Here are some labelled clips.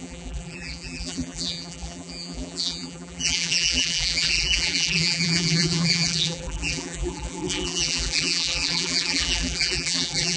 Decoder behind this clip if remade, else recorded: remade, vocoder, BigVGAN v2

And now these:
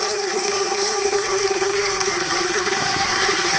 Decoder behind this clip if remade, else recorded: remade, codec, SNAC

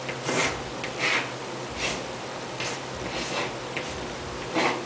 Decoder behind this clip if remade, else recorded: recorded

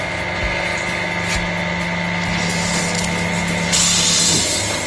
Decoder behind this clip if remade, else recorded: recorded